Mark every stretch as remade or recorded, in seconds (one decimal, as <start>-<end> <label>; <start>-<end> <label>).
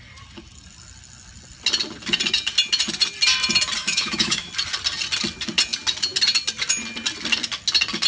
0.0-3.8 recorded; 3.8-4.5 remade; 4.5-8.1 recorded